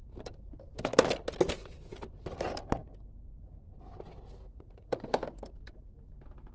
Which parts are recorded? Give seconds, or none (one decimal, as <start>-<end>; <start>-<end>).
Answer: 0.0-4.5; 5.0-6.5